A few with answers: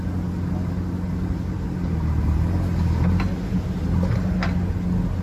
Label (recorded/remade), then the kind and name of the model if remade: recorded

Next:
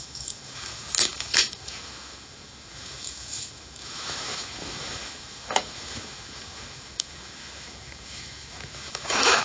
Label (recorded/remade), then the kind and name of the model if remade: remade, autoencoder, DAC-VAE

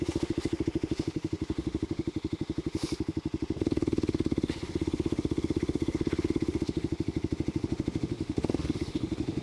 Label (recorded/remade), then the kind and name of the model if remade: remade, autoencoder, DAC-VAE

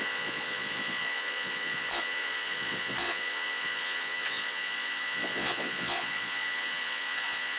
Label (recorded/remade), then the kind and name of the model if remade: remade, vocoder, Vocos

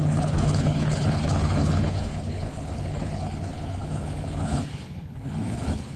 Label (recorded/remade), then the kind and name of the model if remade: remade, codec, HILCodec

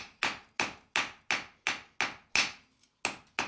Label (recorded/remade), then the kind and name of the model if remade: recorded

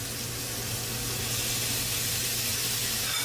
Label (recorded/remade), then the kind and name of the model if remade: recorded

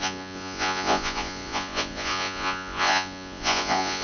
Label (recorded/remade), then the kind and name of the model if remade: remade, vocoder, Vocos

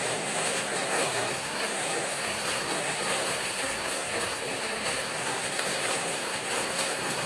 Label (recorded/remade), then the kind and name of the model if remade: remade, codec, SNAC